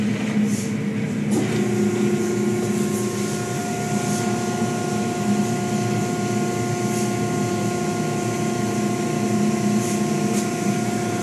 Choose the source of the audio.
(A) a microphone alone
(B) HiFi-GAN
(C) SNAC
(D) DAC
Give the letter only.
A